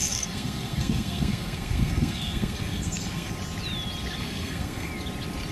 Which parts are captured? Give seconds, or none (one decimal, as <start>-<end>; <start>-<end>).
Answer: 3.3-4.2; 4.9-5.5